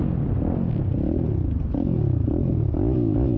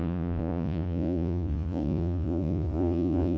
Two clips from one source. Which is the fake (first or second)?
second